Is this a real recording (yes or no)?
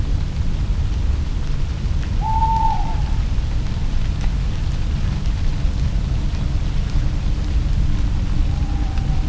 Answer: yes